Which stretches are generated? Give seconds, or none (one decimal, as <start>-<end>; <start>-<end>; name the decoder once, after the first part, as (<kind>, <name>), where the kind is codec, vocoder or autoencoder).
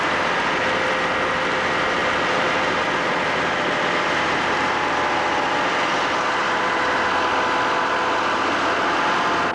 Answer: 2.0-6.9 (vocoder, BigVGAN v2)